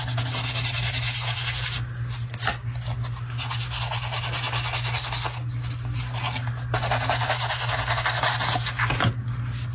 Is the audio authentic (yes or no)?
yes